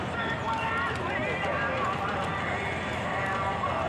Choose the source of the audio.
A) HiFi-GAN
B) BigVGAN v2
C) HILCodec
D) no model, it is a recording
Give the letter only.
D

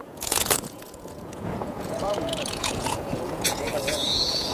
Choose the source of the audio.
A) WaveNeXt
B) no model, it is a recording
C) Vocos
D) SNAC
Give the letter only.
C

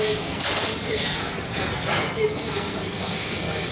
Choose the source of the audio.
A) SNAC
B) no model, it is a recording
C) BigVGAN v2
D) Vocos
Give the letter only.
A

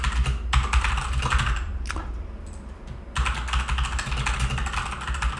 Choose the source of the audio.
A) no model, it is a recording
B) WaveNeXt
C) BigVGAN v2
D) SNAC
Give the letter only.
A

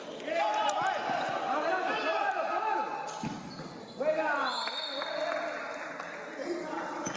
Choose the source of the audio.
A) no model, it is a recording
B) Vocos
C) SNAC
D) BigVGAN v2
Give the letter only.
A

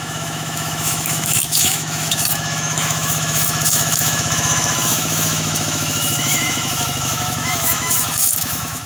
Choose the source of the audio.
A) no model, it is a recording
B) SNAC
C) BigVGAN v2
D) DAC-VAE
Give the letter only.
D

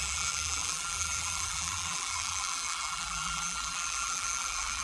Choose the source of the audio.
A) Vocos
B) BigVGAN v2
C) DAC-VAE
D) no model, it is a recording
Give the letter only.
B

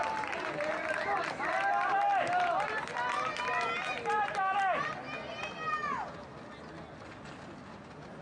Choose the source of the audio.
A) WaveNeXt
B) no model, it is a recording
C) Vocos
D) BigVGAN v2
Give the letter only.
B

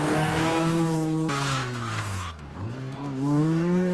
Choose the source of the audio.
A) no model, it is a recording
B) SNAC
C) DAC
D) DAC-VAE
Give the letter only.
C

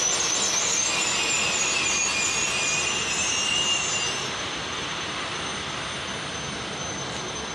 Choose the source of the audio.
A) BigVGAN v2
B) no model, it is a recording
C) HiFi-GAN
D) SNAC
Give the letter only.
B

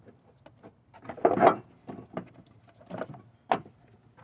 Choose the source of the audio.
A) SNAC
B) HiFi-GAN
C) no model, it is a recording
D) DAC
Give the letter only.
C